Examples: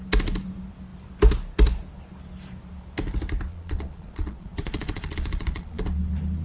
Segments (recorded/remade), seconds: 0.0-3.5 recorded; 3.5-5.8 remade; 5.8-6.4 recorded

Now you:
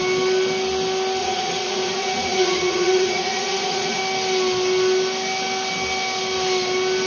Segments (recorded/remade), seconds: 0.0-1.2 recorded; 1.2-4.0 remade; 4.0-7.1 recorded

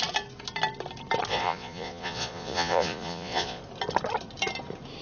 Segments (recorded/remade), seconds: 0.0-1.3 recorded; 1.3-3.6 remade; 3.6-5.0 recorded

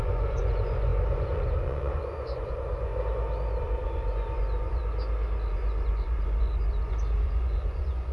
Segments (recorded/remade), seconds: 0.0-2.9 remade; 2.9-3.6 recorded; 3.6-4.8 remade; 4.8-5.5 recorded; 5.5-8.1 remade

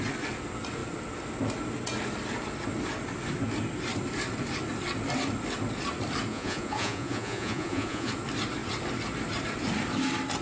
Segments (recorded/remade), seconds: 0.0-6.3 recorded; 6.3-8.1 remade; 8.1-10.4 recorded